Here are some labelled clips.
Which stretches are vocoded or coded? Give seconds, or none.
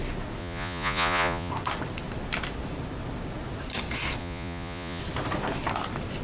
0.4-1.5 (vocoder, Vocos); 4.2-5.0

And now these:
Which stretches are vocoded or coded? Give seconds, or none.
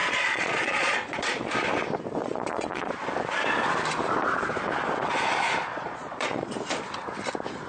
0.0-1.5 (vocoder, Vocos); 2.2-2.9; 5.7-6.6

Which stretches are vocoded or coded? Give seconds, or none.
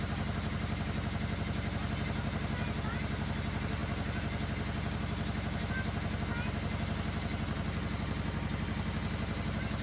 none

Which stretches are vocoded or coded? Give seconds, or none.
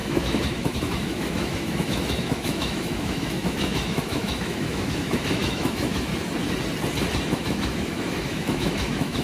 0.0-6.1 (autoencoder, DAC-VAE); 7.3-9.2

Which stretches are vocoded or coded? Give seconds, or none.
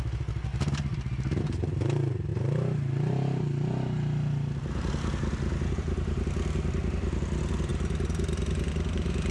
none